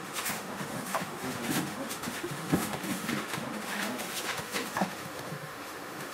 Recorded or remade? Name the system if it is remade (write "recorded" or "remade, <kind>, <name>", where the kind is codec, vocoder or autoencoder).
remade, autoencoder, DAC-VAE